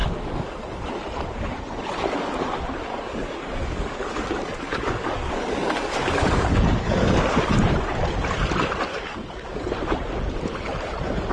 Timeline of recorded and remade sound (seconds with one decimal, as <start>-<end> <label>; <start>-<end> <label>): 0.0-0.8 remade; 0.8-2.9 recorded; 2.9-7.5 remade; 7.5-8.9 recorded; 8.9-9.7 remade; 9.7-11.3 recorded

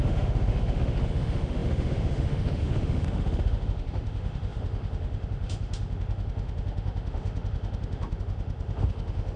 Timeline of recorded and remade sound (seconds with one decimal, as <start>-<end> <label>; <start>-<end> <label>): 0.0-9.4 remade

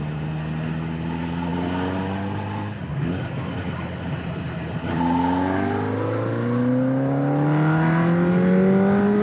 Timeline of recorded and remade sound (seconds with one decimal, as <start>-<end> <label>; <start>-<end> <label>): 0.0-9.2 recorded

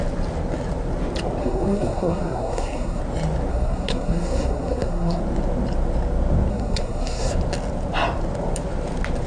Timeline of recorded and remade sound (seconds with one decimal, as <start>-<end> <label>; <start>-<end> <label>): 0.0-1.4 recorded; 1.4-3.0 remade; 3.0-3.5 recorded; 3.5-5.2 remade; 5.2-6.5 recorded; 6.5-7.3 remade; 7.3-9.3 recorded

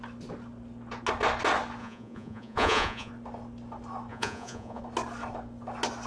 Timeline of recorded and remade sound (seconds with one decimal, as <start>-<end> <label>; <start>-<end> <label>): 0.0-1.8 recorded; 1.8-3.1 remade; 3.1-4.1 recorded; 4.1-4.8 remade; 4.8-6.1 recorded

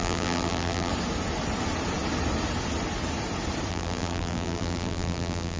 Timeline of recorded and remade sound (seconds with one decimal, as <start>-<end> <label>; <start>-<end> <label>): 0.0-0.9 remade; 0.9-3.7 recorded; 3.7-5.6 remade

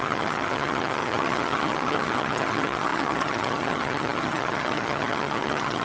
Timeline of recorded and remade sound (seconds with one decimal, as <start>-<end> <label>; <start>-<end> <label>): 0.0-5.8 remade